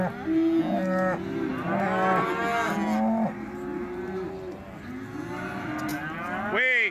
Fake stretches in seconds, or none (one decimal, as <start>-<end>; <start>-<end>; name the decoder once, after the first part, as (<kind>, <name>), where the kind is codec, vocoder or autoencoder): none